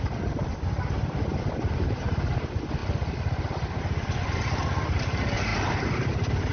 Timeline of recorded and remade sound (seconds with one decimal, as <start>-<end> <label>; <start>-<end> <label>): 0.0-5.5 recorded; 5.5-6.1 remade; 6.1-6.5 recorded

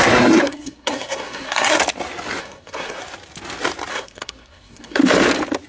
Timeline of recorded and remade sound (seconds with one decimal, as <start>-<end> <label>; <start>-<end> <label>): 0.0-1.8 remade; 1.8-2.4 recorded; 2.4-3.0 remade; 3.0-3.9 recorded; 3.9-5.0 remade; 5.0-5.7 recorded